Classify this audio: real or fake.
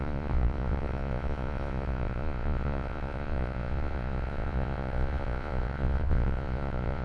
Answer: fake